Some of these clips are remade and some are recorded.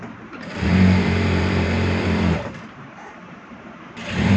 remade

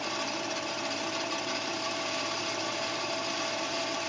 remade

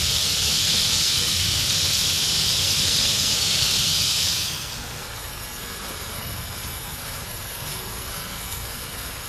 remade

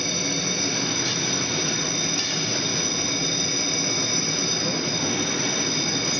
recorded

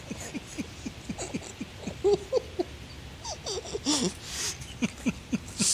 recorded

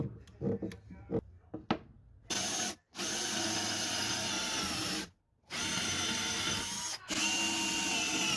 recorded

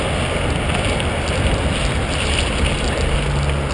recorded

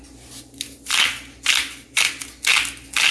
recorded